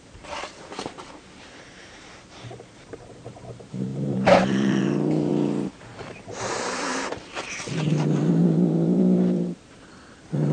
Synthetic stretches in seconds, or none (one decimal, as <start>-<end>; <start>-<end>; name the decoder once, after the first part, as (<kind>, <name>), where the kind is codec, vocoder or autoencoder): 0.0-5.3 (vocoder, BigVGAN v2); 6.0-10.5